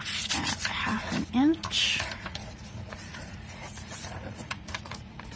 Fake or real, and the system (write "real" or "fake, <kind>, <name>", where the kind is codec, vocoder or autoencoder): fake, vocoder, Vocos